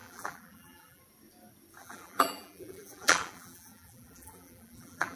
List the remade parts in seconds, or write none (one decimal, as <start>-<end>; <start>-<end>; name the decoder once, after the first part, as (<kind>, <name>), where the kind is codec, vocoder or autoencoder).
0.0-1.0 (vocoder, BigVGAN v2); 1.8-5.2